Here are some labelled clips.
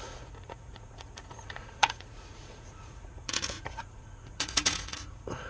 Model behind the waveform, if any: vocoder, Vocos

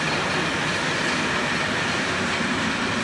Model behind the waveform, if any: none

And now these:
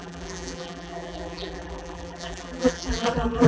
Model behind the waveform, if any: vocoder, BigVGAN v2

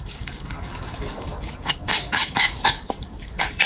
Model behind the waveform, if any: codec, DAC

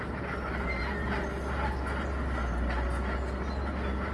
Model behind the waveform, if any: none